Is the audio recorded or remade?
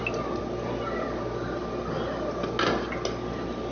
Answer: recorded